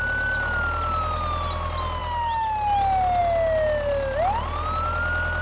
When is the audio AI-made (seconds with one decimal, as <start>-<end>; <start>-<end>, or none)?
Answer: none